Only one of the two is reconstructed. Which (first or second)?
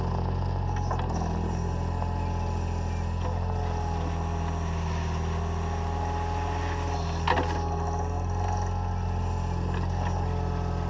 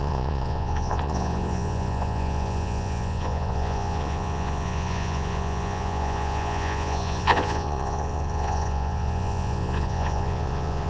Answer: second